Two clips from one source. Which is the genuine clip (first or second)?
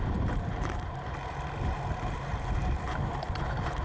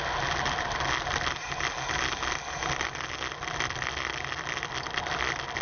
second